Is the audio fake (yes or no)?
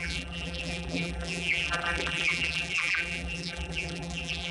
yes